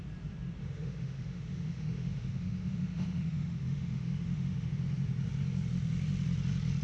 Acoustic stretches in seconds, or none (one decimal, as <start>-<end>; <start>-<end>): 0.0-0.6; 4.7-6.8